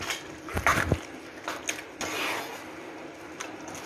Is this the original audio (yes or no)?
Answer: yes